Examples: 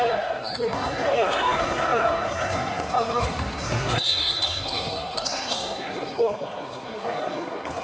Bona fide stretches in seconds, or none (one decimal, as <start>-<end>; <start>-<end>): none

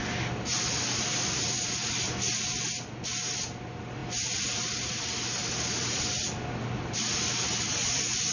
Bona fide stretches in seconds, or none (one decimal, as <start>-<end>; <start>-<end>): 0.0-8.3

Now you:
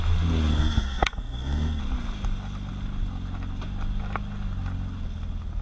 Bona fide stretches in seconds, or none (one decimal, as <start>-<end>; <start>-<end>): 0.0-0.5; 1.8-5.6

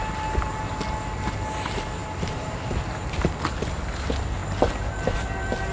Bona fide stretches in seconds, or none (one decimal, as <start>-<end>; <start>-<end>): 0.0-5.7